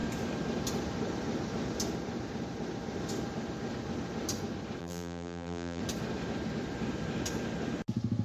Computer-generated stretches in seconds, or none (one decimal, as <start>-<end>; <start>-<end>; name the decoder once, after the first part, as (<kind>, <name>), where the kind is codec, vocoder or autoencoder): 4.8-5.8 (vocoder, BigVGAN v2)